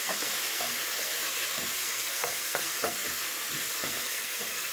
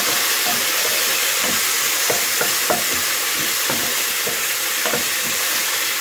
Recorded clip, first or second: second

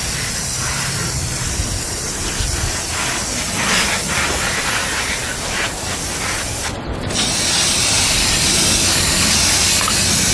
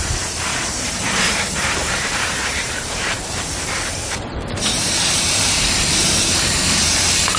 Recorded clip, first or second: first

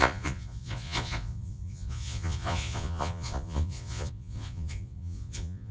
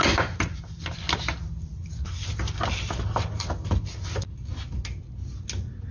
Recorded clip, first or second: second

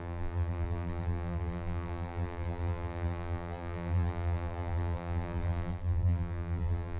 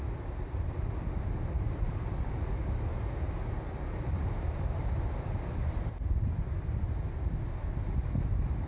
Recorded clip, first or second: second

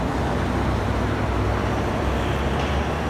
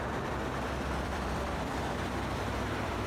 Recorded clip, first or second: first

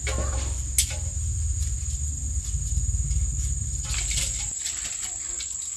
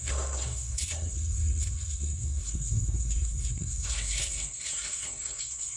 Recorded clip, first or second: first